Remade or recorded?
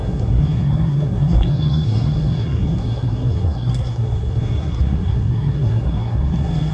remade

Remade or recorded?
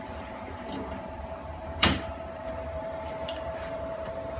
remade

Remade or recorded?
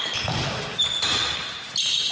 recorded